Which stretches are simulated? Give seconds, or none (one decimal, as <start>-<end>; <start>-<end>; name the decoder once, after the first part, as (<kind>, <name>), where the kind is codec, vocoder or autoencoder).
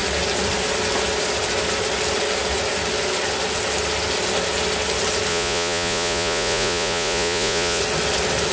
5.3-7.8 (vocoder, Vocos)